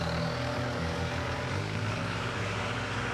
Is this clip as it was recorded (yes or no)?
no